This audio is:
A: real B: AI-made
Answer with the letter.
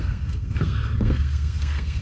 B